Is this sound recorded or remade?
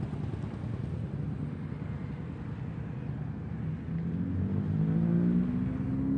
recorded